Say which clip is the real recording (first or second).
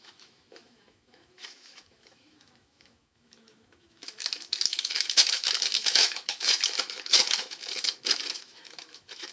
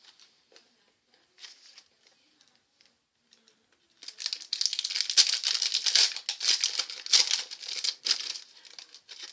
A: second